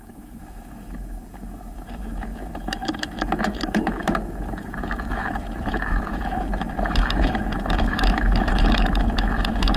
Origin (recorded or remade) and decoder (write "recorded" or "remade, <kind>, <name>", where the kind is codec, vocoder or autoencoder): remade, autoencoder, DAC-VAE